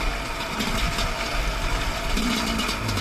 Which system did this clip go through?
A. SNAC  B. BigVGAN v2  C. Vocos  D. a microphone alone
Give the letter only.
D